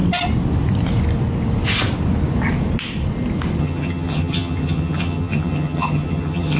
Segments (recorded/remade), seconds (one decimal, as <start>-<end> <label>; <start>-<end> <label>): 0.0-3.6 recorded; 3.6-6.6 remade